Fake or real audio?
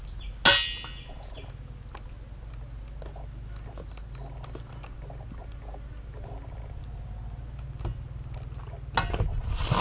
real